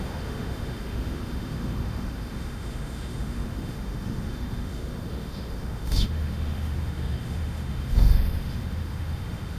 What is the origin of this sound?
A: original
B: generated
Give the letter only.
B